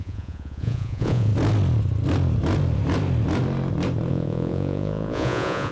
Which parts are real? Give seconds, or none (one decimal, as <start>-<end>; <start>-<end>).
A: 1.3-4.1